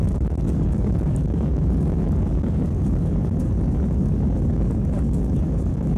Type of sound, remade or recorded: remade